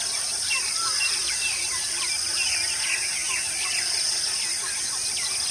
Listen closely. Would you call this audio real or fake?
real